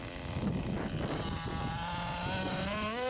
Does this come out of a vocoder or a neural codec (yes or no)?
no